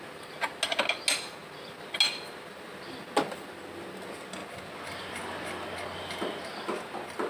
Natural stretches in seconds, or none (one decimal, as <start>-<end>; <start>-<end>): 0.0-7.3